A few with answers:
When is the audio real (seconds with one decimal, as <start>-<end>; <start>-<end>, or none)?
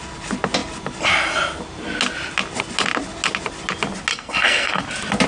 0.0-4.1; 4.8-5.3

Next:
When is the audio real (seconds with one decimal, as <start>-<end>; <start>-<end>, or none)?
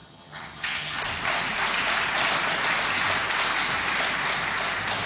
1.0-5.1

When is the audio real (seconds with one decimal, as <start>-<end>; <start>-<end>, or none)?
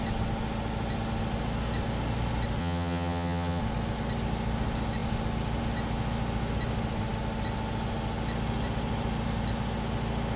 0.0-2.6; 3.6-10.4